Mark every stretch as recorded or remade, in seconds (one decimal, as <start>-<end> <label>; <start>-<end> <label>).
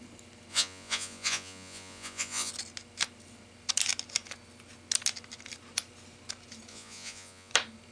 0.0-0.5 recorded; 0.5-2.5 remade; 2.5-6.7 recorded; 6.7-7.5 remade; 7.5-7.9 recorded